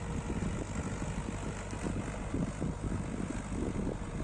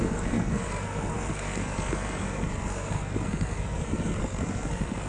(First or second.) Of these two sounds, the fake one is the second